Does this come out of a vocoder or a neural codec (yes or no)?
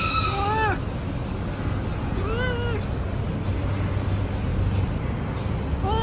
no